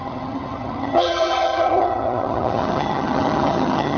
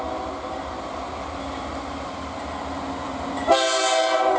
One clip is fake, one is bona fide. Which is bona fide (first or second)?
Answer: second